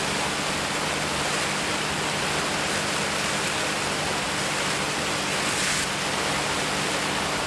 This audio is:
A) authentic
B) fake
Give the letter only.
A